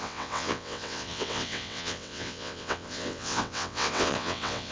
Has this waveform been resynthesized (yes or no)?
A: yes